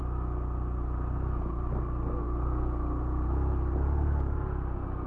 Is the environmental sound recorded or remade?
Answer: recorded